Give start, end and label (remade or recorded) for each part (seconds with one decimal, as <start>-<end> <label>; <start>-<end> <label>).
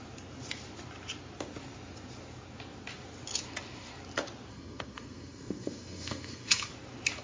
0.0-4.5 recorded; 4.5-6.7 remade; 6.7-7.2 recorded